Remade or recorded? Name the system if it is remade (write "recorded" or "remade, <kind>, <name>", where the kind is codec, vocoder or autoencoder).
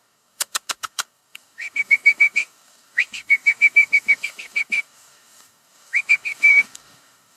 remade, codec, DAC